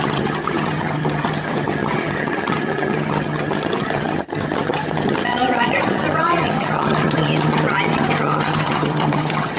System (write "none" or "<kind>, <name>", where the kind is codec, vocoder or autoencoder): vocoder, HiFi-GAN